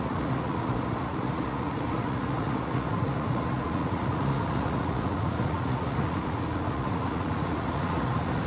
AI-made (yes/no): yes